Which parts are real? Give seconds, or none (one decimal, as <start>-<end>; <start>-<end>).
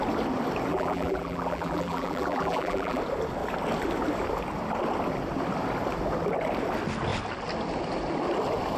0.0-0.7; 3.0-8.8